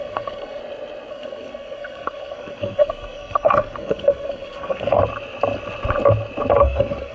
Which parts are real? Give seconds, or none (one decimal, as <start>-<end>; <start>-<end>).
0.6-1.1; 5.0-6.6